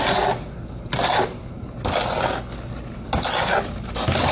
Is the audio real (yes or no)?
yes